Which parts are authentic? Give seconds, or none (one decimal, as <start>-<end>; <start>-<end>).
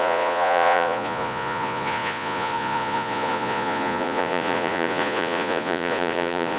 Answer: none